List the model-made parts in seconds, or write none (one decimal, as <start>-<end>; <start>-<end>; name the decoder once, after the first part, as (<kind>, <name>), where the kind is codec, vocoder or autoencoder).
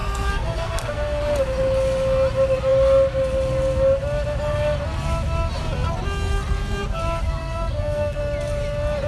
0.0-1.2 (codec, SNAC); 7.4-8.2